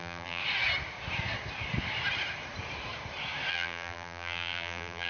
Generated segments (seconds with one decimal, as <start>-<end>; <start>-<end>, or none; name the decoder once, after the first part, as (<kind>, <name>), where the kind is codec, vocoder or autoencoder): 0.0-0.4 (vocoder, BigVGAN v2); 3.5-5.1